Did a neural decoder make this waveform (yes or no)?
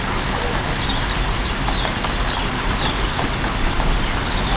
no